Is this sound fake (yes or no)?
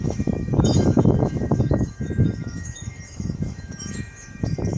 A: yes